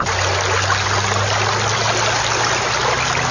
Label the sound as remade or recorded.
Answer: recorded